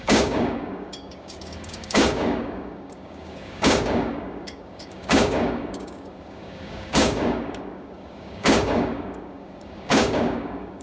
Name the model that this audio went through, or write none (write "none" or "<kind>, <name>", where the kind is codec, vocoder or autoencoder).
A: codec, DAC